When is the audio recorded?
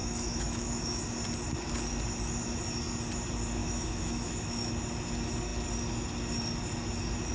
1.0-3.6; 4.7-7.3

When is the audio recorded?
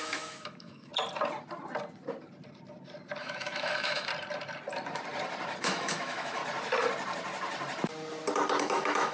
0.9-3.2; 4.1-5.6; 6.4-8.6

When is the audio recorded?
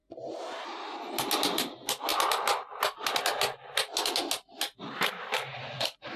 0.0-6.2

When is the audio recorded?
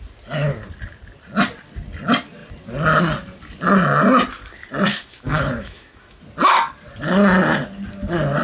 0.0-4.9; 6.2-8.4